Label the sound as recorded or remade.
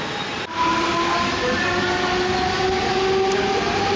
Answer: recorded